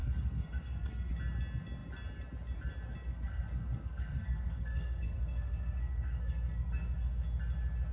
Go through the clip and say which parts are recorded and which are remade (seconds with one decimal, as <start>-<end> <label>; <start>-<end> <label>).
0.0-1.1 remade; 1.1-3.1 recorded; 3.1-7.1 remade; 7.1-7.9 recorded